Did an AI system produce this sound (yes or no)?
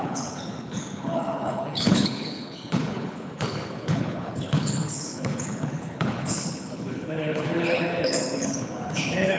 yes